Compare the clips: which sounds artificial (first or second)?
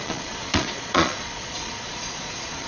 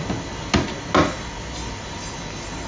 first